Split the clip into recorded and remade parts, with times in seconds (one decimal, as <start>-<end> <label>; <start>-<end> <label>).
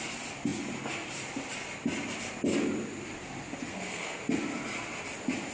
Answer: 0.0-3.7 recorded; 3.7-4.2 remade; 4.2-5.5 recorded